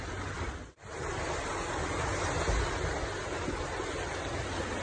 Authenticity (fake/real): real